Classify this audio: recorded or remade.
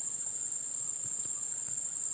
remade